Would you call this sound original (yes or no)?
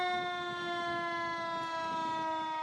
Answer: yes